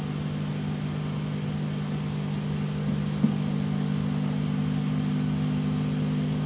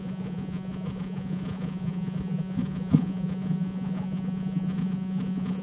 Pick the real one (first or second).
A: first